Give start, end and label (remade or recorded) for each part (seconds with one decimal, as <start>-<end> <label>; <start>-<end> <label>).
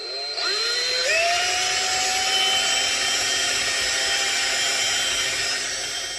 0.0-1.4 remade; 1.4-3.4 recorded; 3.4-5.7 remade; 5.7-6.2 recorded